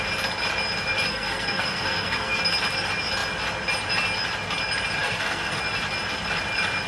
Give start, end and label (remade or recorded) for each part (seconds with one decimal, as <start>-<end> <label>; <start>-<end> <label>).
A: 0.0-1.1 recorded; 1.1-2.4 remade; 2.4-5.0 recorded; 5.0-5.6 remade; 5.6-6.9 recorded